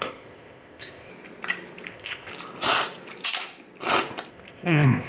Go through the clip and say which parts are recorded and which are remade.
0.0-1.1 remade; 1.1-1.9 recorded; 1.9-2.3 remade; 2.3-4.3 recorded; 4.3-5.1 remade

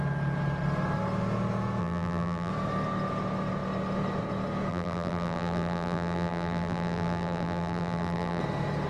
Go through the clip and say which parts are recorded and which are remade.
0.0-1.8 recorded; 1.8-2.5 remade; 2.5-4.7 recorded; 4.7-8.4 remade; 8.4-8.9 recorded

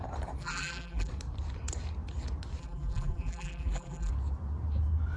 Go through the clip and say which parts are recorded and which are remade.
0.0-0.4 recorded; 0.4-1.1 remade; 1.1-2.6 recorded; 2.6-4.1 remade; 4.1-5.2 recorded